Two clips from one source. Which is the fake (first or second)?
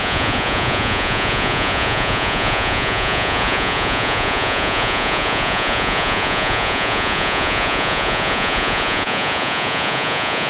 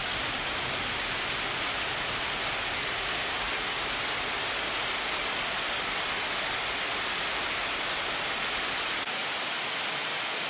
first